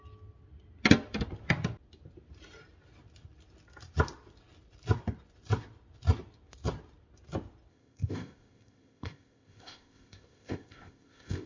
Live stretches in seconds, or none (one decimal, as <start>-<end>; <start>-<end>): 0.0-7.7